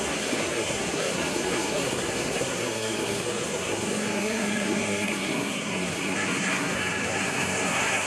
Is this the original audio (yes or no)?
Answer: no